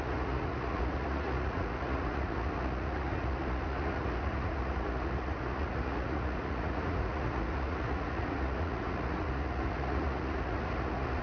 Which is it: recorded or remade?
remade